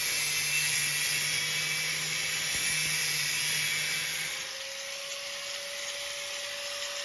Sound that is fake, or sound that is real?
real